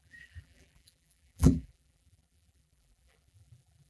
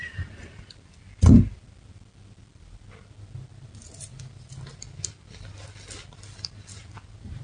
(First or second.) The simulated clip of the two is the first